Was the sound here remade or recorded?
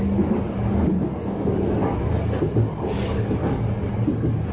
remade